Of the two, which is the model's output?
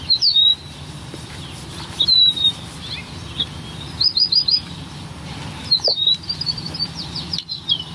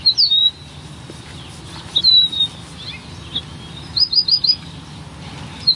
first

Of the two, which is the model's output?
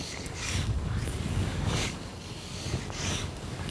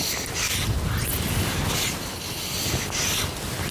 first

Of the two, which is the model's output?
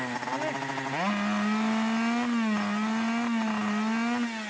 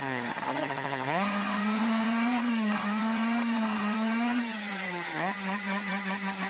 second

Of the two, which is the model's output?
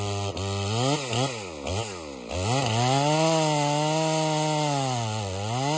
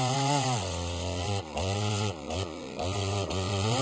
second